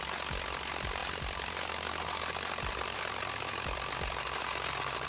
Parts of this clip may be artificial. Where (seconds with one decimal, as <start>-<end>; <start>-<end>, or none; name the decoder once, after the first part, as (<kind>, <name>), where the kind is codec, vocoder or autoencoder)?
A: none